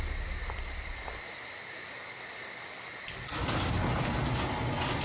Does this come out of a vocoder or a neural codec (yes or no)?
no